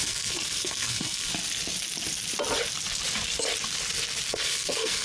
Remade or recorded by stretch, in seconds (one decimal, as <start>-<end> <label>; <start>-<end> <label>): 0.0-1.3 remade; 1.3-4.3 recorded; 4.3-5.0 remade